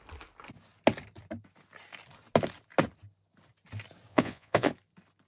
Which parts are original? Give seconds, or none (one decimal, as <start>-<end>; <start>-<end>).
0.0-4.1; 4.7-5.3